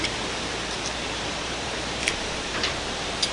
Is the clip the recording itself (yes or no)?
no